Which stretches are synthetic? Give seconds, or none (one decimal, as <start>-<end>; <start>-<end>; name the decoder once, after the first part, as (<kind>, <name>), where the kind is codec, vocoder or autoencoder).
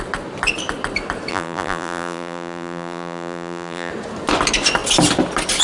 1.3-3.9 (vocoder, BigVGAN v2)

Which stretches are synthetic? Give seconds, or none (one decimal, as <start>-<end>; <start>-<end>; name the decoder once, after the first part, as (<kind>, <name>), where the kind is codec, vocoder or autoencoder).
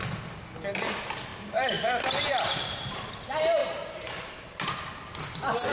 1.3-3.1 (vocoder, BigVGAN v2); 3.6-4.8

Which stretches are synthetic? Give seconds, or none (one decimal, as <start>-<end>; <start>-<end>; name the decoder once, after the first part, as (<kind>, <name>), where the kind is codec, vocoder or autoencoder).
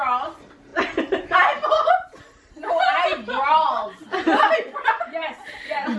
0.0-6.0 (vocoder, BigVGAN v2)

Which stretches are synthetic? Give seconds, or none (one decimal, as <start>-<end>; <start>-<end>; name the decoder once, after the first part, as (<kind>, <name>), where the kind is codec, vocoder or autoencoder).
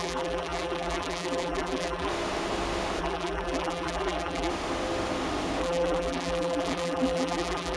0.0-2.1 (vocoder, BigVGAN v2); 3.0-4.5; 5.6-7.8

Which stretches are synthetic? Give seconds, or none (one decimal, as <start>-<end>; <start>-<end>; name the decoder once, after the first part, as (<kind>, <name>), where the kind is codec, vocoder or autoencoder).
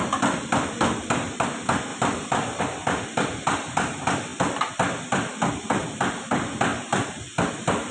0.0-4.3 (vocoder, BigVGAN v2); 5.5-6.7; 7.5-7.9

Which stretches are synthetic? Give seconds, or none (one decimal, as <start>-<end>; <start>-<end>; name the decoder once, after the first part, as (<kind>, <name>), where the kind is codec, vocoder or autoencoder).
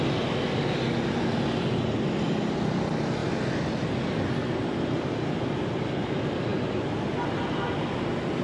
none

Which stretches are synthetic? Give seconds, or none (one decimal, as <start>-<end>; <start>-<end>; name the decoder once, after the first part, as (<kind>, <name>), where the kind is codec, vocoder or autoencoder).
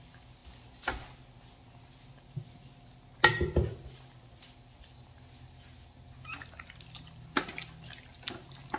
none